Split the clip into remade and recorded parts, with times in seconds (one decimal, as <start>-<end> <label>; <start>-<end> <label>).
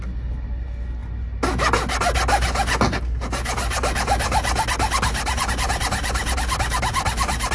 0.0-7.5 recorded